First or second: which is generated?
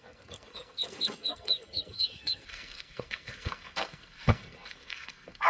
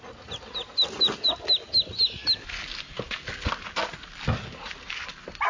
first